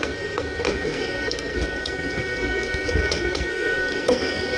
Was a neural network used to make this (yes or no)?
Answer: yes